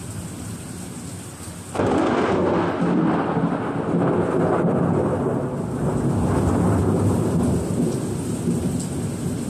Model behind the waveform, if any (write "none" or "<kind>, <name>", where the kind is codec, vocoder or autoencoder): none